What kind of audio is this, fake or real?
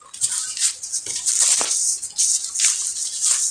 real